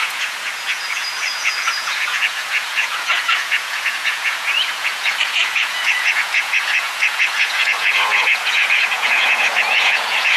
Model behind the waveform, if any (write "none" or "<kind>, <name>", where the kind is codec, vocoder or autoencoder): vocoder, Vocos